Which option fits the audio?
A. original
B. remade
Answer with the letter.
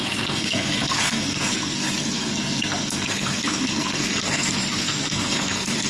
B